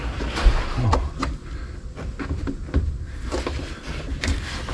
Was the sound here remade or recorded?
recorded